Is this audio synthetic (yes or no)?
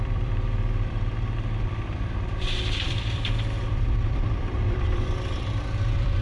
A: yes